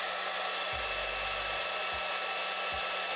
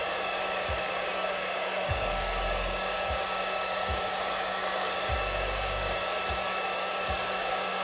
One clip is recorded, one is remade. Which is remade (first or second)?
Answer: second